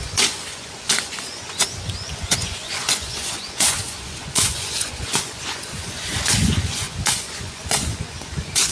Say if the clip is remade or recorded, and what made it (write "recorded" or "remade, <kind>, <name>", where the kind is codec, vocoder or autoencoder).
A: remade, vocoder, Vocos